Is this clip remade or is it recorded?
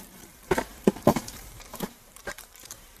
remade